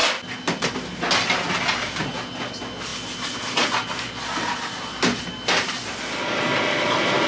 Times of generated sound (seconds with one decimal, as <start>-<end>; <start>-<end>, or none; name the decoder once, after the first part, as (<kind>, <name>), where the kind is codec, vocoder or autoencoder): none